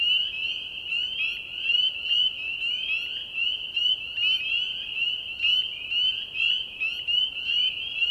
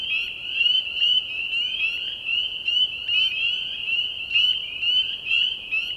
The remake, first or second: second